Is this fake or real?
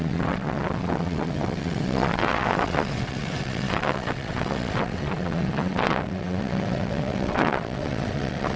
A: fake